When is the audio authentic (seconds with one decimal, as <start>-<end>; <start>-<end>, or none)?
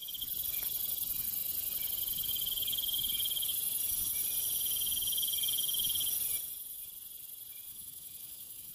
0.0-7.7